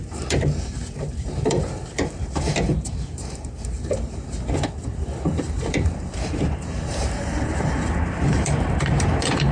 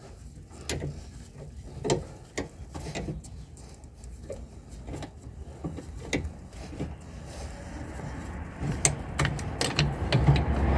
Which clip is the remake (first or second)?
first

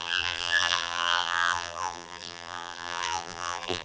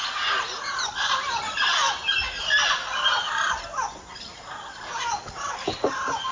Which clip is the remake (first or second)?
first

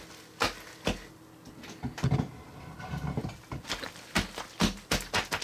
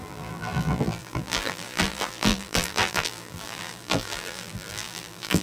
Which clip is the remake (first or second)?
second